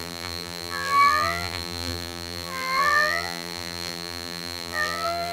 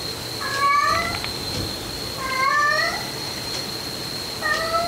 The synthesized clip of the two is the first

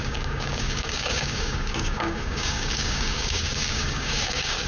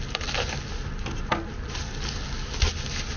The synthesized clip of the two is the first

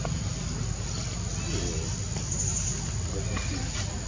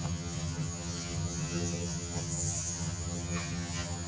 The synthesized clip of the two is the second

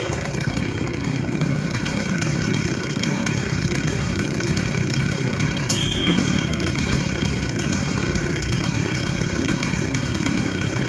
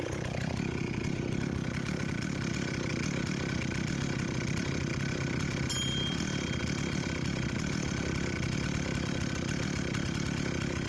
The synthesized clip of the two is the first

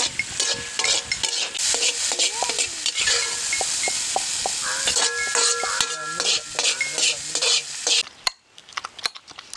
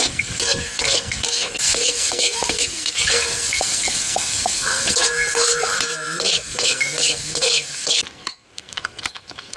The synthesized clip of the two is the second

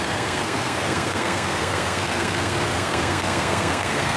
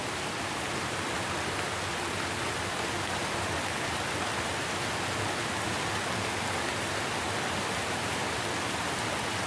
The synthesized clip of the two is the first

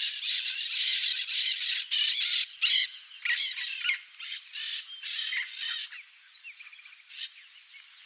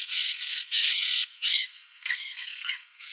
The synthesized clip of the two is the second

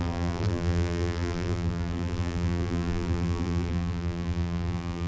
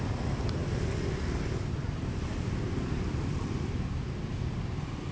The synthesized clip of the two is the first